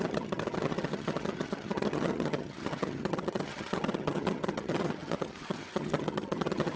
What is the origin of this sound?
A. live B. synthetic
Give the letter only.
B